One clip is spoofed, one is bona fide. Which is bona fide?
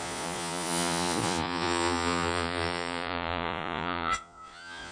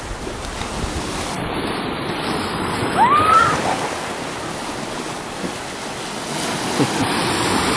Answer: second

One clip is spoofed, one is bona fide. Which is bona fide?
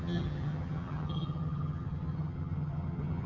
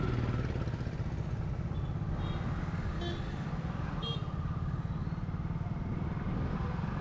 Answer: second